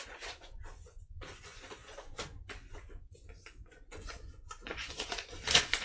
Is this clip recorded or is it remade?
remade